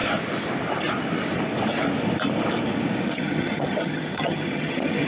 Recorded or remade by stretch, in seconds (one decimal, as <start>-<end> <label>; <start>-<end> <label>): 0.0-3.1 recorded; 3.1-5.1 remade